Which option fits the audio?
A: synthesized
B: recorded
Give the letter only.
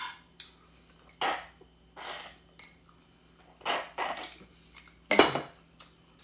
B